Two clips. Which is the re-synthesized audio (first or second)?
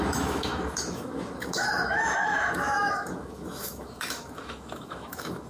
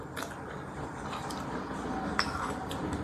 first